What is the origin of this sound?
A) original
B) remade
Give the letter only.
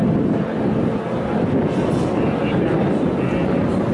A